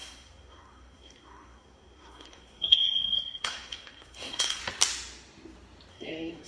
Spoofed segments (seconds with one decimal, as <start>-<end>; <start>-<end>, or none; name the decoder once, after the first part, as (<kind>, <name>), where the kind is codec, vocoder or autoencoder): 0.0-4.6 (codec, SNAC); 5.9-6.5